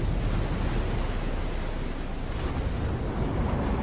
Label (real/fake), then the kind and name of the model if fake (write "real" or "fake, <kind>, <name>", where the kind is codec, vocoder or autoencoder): real